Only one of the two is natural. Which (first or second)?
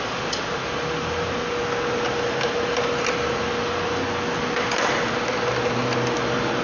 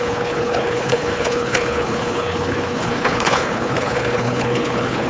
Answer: first